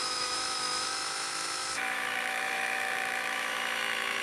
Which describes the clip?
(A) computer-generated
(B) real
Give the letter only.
A